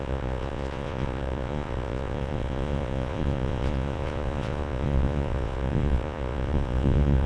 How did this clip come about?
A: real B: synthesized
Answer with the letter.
B